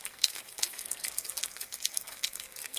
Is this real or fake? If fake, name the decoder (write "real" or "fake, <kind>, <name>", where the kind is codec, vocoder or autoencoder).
fake, codec, SNAC